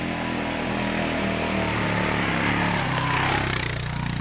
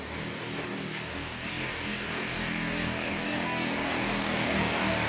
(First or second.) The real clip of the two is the first